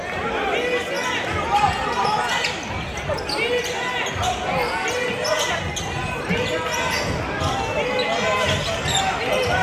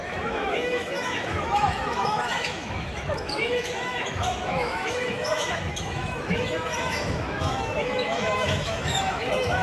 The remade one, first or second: second